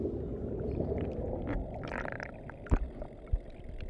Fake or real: real